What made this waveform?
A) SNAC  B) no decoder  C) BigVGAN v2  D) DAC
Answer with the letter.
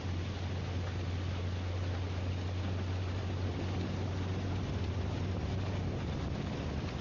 B